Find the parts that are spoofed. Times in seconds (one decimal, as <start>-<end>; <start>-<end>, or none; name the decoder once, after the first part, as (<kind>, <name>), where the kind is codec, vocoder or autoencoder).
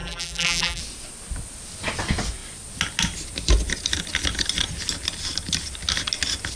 0.0-0.8 (vocoder, BigVGAN v2)